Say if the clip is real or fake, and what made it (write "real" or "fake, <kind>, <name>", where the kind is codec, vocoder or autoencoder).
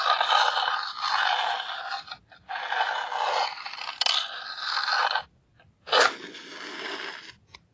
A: real